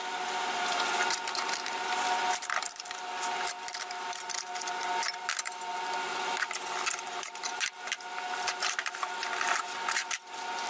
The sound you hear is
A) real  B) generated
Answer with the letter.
A